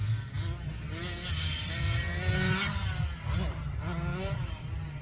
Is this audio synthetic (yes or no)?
no